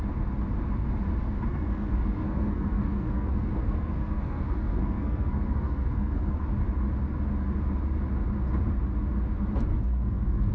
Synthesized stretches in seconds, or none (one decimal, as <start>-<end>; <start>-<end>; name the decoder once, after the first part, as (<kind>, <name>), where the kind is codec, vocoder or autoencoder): 1.5-6.4 (codec, SNAC); 9.7-10.5